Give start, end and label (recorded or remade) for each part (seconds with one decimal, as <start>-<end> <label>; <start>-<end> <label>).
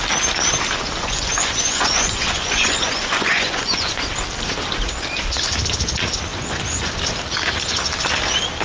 0.0-1.0 recorded; 1.0-4.1 remade; 4.1-6.3 recorded; 6.3-6.9 remade; 6.9-8.6 recorded